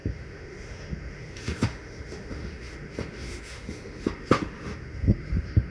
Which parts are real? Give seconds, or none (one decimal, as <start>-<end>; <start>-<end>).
none